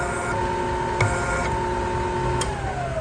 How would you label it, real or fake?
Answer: real